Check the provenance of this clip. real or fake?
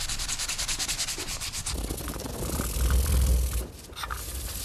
fake